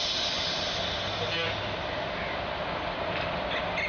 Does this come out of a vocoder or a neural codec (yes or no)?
no